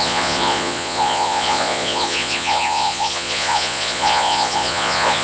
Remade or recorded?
remade